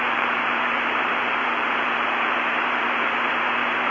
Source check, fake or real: fake